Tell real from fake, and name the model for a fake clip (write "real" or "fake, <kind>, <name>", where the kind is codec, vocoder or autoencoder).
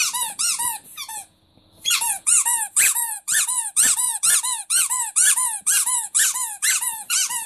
fake, vocoder, Vocos